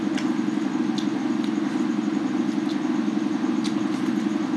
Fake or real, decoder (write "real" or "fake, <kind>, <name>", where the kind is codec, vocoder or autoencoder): real